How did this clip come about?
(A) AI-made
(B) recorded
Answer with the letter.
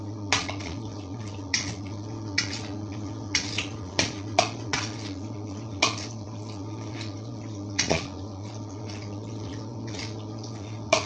A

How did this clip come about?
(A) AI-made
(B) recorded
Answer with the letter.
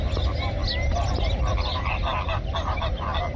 B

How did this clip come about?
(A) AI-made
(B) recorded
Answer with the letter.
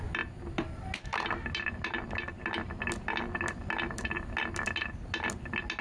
B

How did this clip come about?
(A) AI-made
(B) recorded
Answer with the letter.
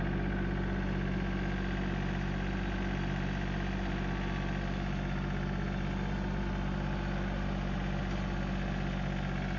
B